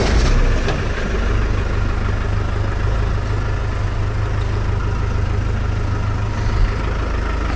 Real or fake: real